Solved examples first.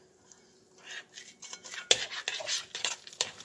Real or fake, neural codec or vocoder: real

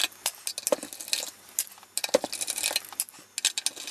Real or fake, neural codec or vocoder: real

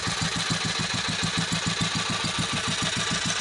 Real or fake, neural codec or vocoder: real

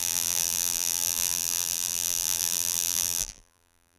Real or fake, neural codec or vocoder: fake, vocoder, BigVGAN v2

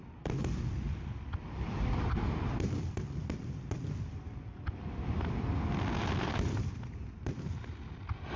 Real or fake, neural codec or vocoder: fake, vocoder, BigVGAN v2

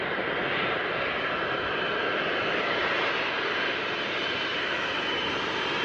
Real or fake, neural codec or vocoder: fake, vocoder, BigVGAN v2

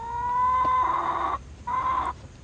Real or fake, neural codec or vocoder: fake, vocoder, BigVGAN v2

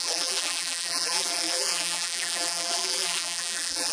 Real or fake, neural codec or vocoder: fake, vocoder, BigVGAN v2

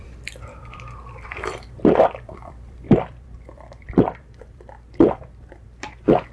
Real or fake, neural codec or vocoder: fake, vocoder, BigVGAN v2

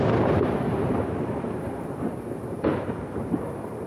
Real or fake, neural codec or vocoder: fake, vocoder, BigVGAN v2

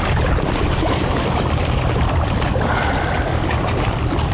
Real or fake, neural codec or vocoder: fake, vocoder, BigVGAN v2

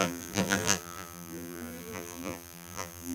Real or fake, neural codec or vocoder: fake, vocoder, BigVGAN v2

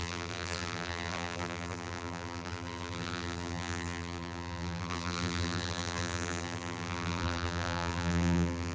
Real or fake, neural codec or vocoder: fake, vocoder, BigVGAN v2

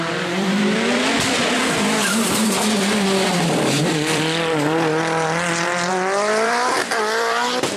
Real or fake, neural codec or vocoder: fake, vocoder, BigVGAN v2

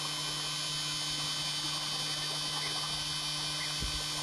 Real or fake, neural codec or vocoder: real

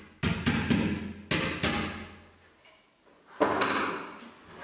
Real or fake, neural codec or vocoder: real